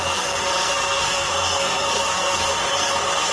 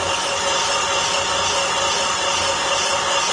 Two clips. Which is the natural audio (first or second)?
second